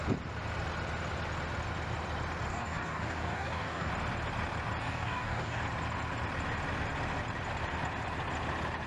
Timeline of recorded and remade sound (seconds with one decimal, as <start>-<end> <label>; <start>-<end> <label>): 0.0-2.5 recorded; 2.5-3.9 remade; 3.9-4.8 recorded; 4.8-5.6 remade; 5.6-8.9 recorded